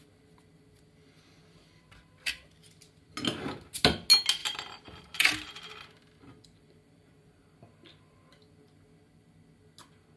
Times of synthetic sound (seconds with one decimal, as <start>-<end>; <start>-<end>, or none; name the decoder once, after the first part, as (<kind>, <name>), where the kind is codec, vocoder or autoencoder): 4.4-7.4 (vocoder, BigVGAN v2)